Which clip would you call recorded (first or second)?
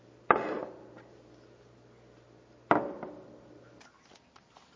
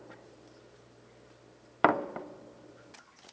first